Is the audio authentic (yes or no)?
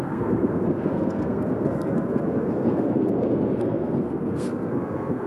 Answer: no